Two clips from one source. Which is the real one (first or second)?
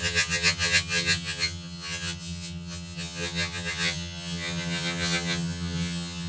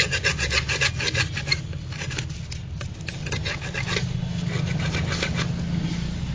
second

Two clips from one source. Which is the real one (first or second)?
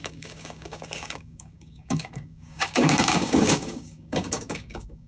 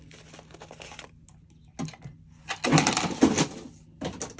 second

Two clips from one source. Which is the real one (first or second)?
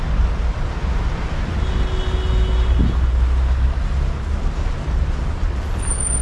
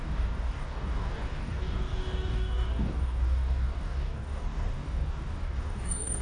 first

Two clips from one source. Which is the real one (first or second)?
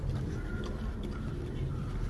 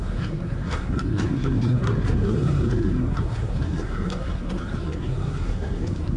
first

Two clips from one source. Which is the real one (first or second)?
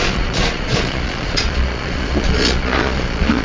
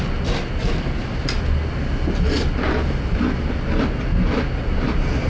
second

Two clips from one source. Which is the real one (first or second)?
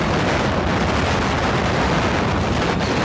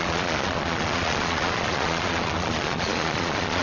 first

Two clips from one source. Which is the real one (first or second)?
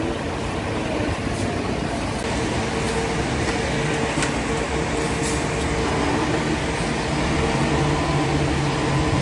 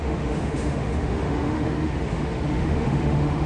first